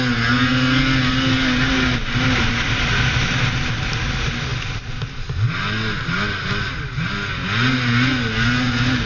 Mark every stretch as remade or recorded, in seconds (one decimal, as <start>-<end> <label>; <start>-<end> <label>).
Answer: 0.0-9.1 recorded